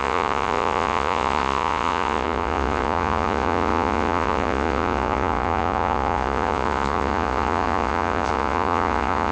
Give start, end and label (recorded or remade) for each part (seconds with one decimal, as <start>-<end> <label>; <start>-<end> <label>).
0.0-9.3 remade